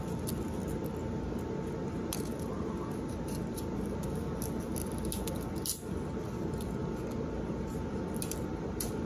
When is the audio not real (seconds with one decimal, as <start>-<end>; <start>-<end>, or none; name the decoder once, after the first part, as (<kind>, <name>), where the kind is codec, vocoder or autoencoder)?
none

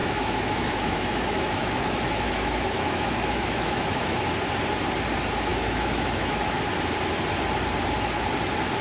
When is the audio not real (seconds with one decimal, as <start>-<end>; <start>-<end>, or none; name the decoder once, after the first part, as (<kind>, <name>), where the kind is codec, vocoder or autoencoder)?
0.0-4.2 (autoencoder, DAC-VAE); 5.5-6.6